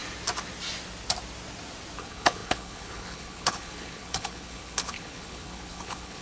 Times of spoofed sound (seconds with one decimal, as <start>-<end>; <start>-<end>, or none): 2.0-6.2

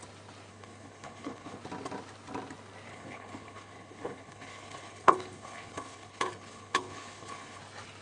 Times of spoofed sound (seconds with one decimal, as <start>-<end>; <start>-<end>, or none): 0.5-1.6; 2.9-7.6